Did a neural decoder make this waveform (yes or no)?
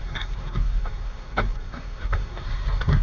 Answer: yes